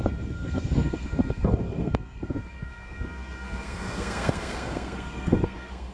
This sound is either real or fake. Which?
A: fake